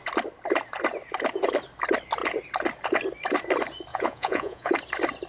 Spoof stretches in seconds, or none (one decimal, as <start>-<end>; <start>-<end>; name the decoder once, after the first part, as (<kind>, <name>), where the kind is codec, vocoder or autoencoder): 3.9-4.7 (vocoder, Vocos)